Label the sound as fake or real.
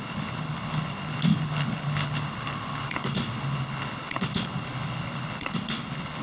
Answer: fake